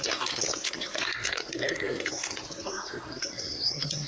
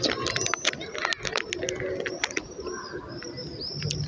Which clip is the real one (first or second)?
second